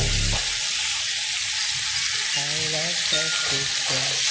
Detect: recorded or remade recorded